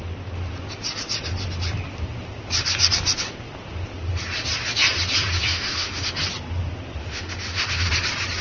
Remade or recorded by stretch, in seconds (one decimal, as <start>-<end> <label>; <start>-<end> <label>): 0.0-5.5 recorded; 5.5-6.1 remade; 6.1-7.0 recorded; 7.0-7.9 remade; 7.9-8.4 recorded